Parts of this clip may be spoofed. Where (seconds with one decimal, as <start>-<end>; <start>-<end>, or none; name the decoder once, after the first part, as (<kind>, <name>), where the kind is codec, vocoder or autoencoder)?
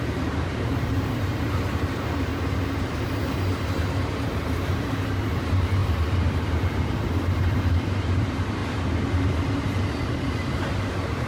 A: 0.0-2.3 (vocoder, BigVGAN v2); 4.3-8.6; 10.7-11.3